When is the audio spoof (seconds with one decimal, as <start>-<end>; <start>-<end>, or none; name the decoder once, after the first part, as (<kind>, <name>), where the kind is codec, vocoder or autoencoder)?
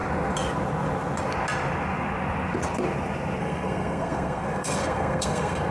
3.4-5.7 (codec, SNAC)